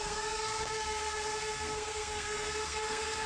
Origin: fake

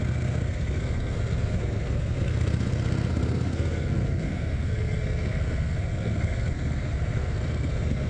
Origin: fake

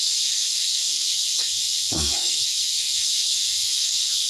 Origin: fake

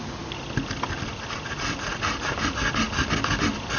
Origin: real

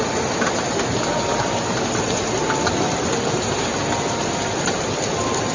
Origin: real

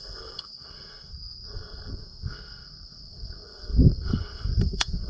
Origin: fake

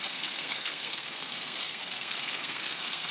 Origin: fake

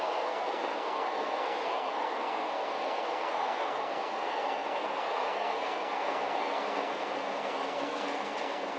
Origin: fake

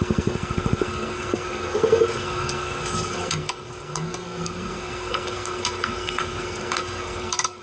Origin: fake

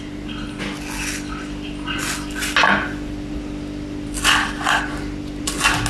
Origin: real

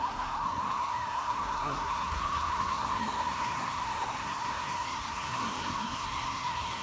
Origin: fake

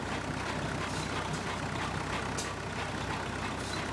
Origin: real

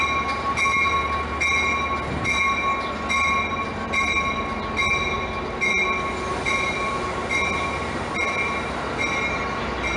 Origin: real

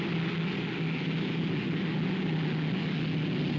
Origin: real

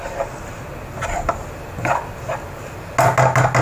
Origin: real